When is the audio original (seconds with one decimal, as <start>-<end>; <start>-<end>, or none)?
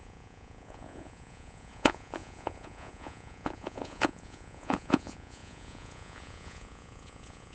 none